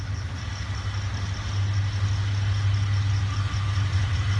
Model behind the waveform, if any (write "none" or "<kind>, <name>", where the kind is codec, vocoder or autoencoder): none